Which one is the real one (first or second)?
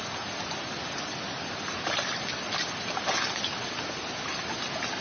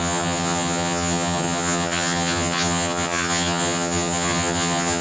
first